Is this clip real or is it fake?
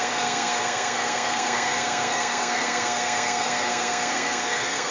fake